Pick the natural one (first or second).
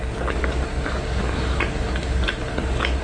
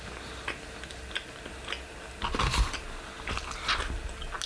second